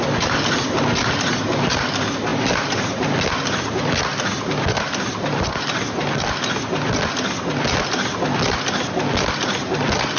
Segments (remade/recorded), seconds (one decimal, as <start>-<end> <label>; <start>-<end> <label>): 0.0-10.2 recorded